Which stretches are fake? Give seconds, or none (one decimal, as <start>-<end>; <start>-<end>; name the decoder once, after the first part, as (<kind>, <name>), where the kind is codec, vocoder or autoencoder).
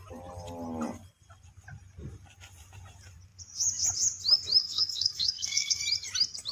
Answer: 4.6-5.8 (codec, SNAC)